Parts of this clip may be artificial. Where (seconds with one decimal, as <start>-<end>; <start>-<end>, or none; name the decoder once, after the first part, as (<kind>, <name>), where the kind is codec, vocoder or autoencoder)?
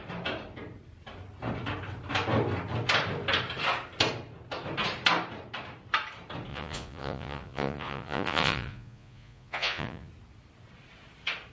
6.5-10.1 (vocoder, Vocos)